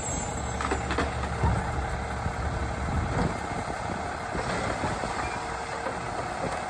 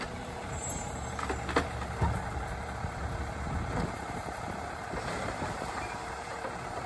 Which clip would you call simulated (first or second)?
second